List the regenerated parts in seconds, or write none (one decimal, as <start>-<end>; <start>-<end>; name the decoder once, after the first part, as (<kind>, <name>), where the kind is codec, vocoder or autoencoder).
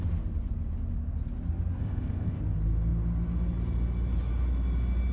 1.8-2.4 (codec, ZipCodec)